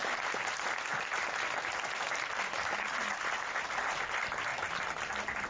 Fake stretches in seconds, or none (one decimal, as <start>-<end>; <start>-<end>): 0.9-1.7; 4.5-5.1